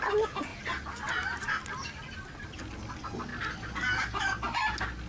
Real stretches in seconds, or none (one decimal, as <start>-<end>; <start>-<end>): 0.0-5.1